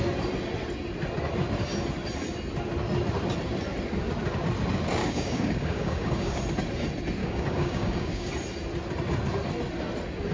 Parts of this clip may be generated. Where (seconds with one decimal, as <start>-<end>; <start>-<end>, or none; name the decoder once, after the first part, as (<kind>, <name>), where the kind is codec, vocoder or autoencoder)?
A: 5.0-6.4 (codec, DAC); 7.2-8.3